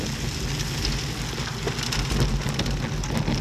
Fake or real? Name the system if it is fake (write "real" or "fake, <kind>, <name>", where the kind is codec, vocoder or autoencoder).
real